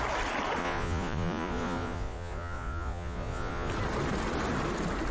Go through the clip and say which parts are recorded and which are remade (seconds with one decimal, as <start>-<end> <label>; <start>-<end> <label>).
0.0-0.6 recorded; 0.6-3.7 remade; 3.7-5.1 recorded